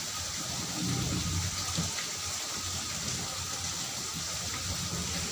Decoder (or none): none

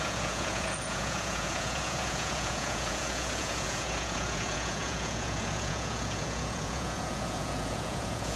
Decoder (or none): vocoder, Vocos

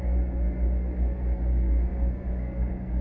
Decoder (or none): codec, SNAC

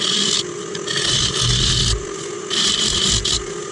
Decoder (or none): none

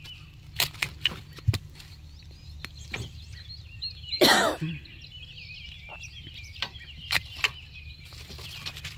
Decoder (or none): none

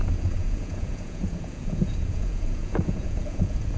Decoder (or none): vocoder, Vocos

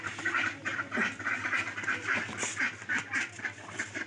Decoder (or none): none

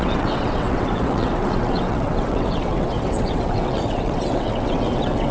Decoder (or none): vocoder, WaveNeXt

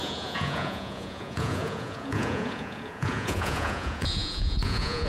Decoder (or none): vocoder, Vocos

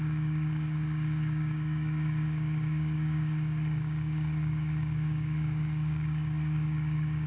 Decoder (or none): codec, DAC